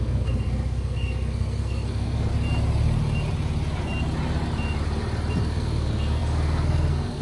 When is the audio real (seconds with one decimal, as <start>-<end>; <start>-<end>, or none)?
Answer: 2.3-5.4